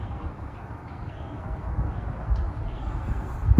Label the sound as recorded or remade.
remade